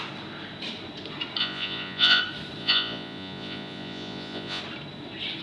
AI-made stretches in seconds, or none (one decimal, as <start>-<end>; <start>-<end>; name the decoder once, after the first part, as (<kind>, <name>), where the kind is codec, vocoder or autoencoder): 1.4-2.2 (vocoder, Vocos); 2.6-4.6

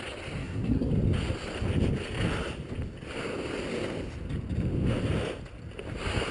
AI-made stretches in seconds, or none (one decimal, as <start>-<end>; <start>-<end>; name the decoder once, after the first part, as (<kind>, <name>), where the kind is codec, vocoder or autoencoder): 0.4-0.9 (codec, SNAC)

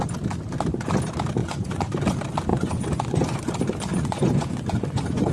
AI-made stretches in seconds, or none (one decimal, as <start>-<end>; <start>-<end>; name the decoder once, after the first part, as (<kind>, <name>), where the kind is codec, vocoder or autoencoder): 1.4-1.9 (vocoder, Vocos); 2.5-3.4; 3.9-5.3

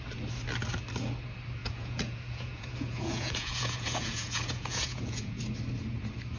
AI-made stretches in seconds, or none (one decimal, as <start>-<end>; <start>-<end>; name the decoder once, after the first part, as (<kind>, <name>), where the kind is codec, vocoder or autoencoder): 1.6-5.4 (vocoder, Vocos)